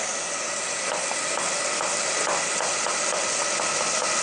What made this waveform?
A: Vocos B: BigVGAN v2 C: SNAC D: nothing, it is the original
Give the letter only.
D